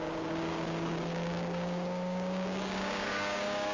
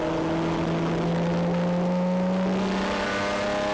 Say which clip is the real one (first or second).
second